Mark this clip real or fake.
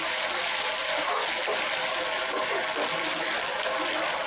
real